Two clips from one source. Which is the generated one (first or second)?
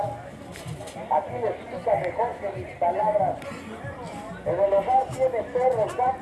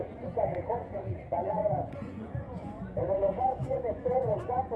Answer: second